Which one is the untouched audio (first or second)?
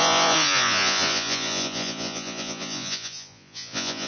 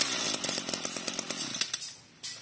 second